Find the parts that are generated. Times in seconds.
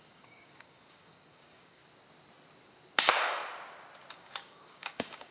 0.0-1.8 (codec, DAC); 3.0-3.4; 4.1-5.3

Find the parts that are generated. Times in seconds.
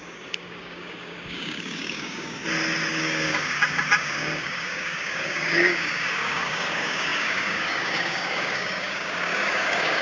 0.0-2.4 (codec, DAC); 2.9-10.0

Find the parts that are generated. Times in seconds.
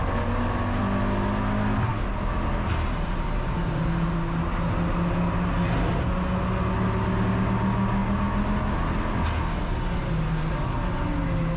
none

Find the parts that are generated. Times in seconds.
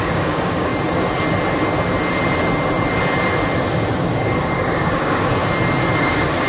0.0-0.7 (codec, DAC); 4.1-5.3; 6.0-6.5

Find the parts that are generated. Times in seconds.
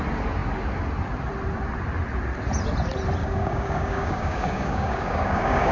3.2-5.7 (codec, DAC)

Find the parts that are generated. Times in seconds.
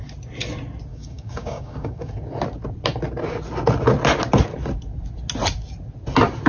0.9-2.1 (codec, DAC)